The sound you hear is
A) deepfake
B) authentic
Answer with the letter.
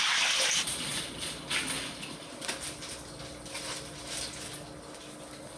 B